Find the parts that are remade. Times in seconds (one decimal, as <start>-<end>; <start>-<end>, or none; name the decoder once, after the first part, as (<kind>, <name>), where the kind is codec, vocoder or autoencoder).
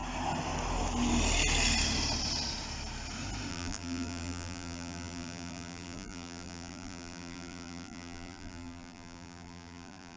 3.5-10.2 (vocoder, BigVGAN v2)